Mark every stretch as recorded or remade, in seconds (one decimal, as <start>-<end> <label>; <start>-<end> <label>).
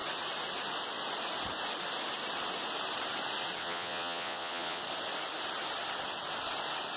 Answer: 0.0-3.6 recorded; 3.6-4.8 remade; 4.8-7.0 recorded